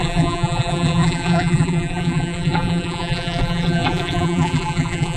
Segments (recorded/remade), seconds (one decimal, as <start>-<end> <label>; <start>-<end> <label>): 0.0-5.2 remade